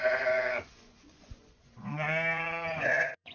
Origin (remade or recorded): remade